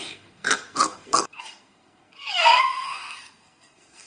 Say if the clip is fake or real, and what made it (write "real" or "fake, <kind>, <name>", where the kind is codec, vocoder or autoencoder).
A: fake, codec, SNAC